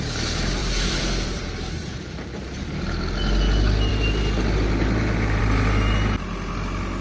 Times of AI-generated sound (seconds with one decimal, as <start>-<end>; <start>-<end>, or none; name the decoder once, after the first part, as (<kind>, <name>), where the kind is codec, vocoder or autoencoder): 0.6-1.4 (vocoder, BigVGAN v2); 1.9-2.4